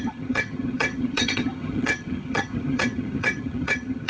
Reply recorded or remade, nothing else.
remade